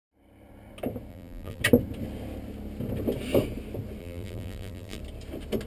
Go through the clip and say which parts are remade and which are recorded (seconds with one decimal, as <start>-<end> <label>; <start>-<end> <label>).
0.0-1.1 recorded; 1.1-1.6 remade; 1.6-4.0 recorded; 4.0-5.0 remade; 5.0-5.7 recorded